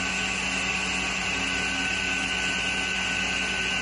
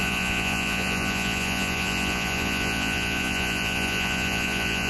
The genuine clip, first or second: first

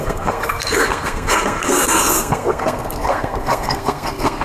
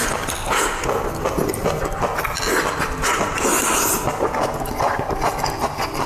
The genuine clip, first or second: second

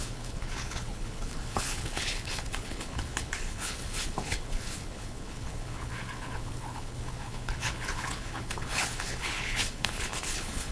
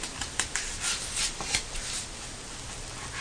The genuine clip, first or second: second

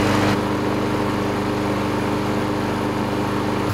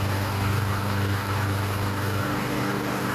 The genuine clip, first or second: first